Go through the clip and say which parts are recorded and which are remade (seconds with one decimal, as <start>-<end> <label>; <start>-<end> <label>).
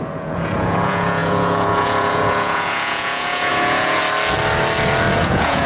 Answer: 0.0-4.0 remade; 4.0-5.2 recorded; 5.2-5.7 remade